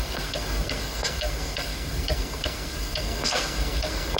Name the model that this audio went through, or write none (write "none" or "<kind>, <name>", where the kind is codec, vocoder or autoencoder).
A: codec, SNAC